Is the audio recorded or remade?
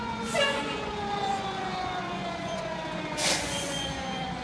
remade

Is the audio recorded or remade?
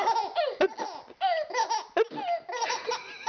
recorded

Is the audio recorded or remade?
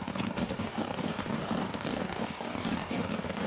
remade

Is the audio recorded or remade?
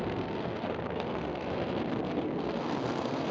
remade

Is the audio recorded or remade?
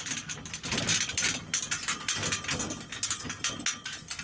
recorded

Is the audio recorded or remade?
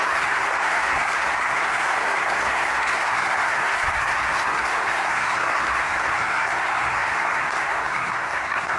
remade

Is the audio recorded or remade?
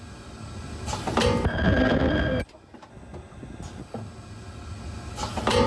recorded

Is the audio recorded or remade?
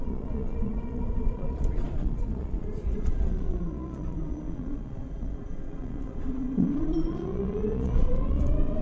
remade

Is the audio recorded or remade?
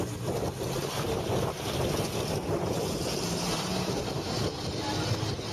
recorded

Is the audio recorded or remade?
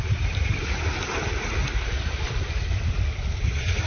recorded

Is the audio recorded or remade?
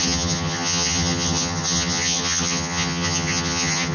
remade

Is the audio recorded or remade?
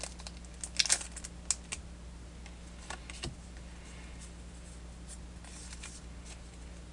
recorded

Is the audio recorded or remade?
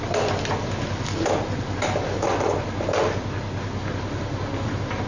recorded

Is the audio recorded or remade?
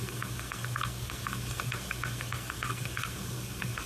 remade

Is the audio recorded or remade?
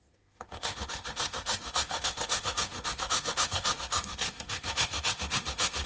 remade